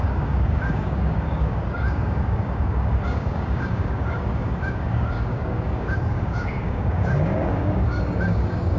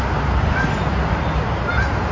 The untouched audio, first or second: second